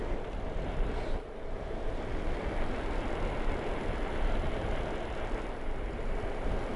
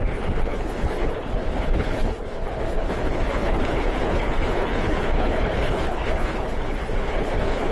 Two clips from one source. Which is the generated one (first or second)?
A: second